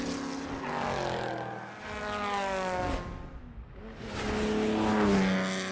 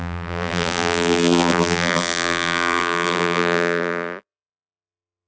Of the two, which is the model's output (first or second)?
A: second